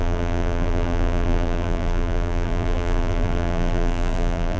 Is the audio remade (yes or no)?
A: yes